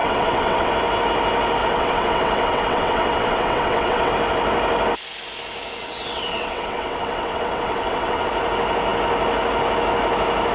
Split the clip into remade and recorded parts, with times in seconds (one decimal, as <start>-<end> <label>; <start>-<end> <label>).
0.0-0.7 remade; 0.7-1.6 recorded; 1.6-4.1 remade; 4.1-5.8 recorded; 5.8-8.3 remade; 8.3-10.5 recorded

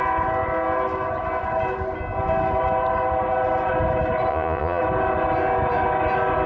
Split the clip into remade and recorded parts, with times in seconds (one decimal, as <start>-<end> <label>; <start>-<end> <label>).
0.0-4.3 recorded; 4.3-4.8 remade; 4.8-6.5 recorded

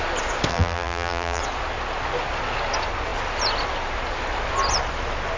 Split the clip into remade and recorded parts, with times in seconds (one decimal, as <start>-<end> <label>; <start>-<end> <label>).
0.0-0.5 recorded; 0.5-1.4 remade; 1.4-5.4 recorded